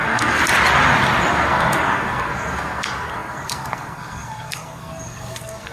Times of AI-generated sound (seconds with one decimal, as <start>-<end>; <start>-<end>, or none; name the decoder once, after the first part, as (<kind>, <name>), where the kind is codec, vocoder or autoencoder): 0.0-0.4 (codec, SNAC); 1.3-5.7